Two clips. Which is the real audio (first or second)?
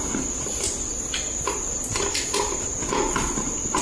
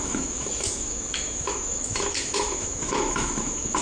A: first